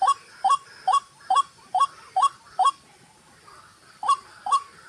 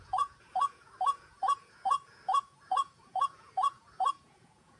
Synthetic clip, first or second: second